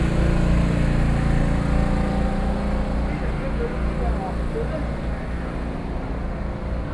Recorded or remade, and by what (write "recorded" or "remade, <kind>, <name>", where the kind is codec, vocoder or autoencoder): recorded